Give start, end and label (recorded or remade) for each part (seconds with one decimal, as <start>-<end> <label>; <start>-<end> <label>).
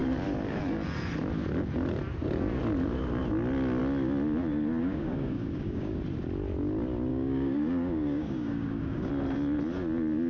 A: 0.0-4.8 recorded; 4.8-6.0 remade; 6.0-7.1 recorded; 7.1-9.1 remade; 9.1-10.3 recorded